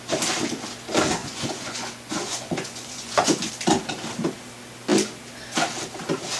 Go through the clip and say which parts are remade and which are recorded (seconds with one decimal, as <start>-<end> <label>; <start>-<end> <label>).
0.0-1.2 recorded; 1.2-3.5 remade; 3.5-6.4 recorded